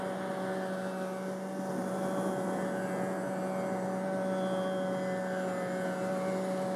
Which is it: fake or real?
real